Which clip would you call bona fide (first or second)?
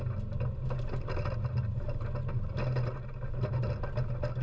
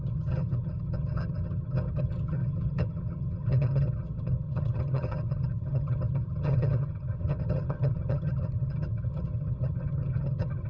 first